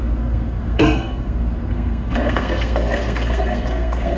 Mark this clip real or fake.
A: fake